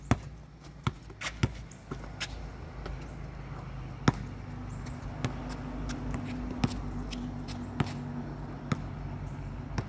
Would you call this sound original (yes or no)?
yes